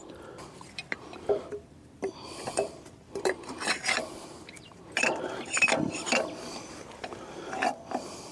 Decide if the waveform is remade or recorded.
remade